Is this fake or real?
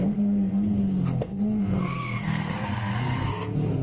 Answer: fake